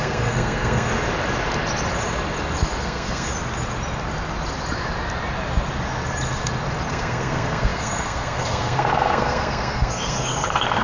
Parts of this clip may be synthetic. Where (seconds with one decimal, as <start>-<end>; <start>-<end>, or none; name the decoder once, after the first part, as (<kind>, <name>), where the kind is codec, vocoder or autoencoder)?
0.0-0.9 (codec, SNAC); 2.8-3.3; 6.9-10.8